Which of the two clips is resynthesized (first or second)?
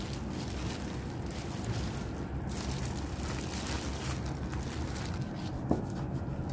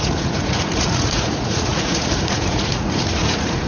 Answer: second